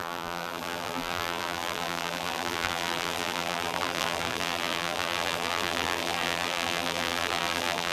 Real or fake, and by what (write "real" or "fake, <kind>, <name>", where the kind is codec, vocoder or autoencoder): fake, vocoder, BigVGAN v2